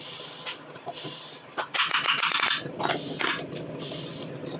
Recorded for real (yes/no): yes